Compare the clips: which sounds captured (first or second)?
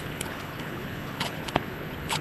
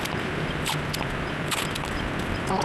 second